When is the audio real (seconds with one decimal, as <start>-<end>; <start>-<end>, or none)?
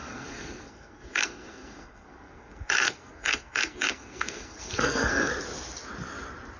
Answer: 5.3-6.6